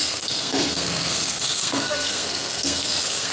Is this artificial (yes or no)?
yes